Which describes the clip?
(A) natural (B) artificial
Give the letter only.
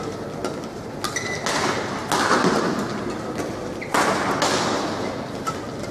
A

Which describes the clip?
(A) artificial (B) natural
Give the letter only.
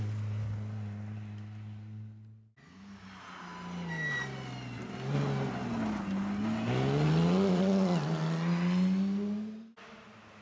B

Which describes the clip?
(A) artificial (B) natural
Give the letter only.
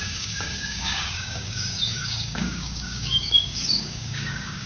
A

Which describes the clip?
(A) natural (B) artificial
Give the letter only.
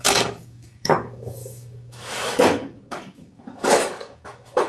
B